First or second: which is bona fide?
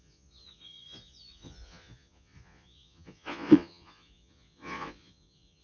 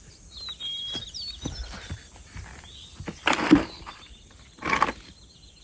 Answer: second